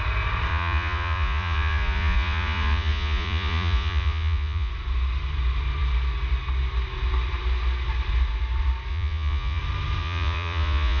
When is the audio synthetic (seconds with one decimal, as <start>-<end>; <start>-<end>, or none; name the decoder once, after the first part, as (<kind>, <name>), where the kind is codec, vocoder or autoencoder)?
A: 0.5-4.7 (vocoder, Vocos); 8.9-9.6; 10.0-11.0